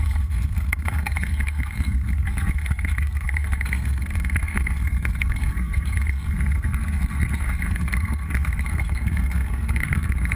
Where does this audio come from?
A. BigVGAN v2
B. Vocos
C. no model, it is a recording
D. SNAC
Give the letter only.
D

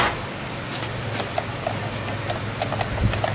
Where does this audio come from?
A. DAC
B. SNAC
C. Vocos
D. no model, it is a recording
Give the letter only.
D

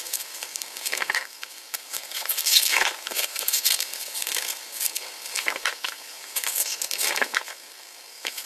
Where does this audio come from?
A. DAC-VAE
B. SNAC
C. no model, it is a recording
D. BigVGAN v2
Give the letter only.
B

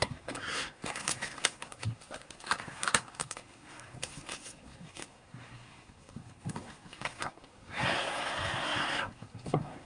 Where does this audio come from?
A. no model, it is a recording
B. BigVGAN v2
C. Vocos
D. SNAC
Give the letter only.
D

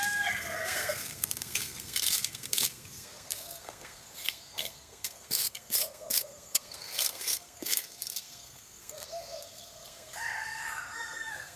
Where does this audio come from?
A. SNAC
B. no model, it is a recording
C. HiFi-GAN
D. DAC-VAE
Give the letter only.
A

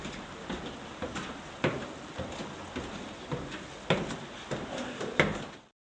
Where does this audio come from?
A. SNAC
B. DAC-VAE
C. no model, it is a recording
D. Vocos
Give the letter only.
C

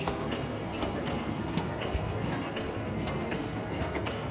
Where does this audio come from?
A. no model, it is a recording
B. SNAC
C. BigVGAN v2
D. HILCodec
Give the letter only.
B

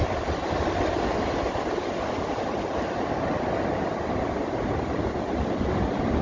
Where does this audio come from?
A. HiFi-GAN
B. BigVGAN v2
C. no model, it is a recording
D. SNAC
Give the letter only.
C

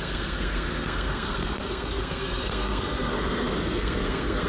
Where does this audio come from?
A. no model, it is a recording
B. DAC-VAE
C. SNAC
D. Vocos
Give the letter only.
C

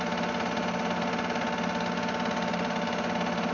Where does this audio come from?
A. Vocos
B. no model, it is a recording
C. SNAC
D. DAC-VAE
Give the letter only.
B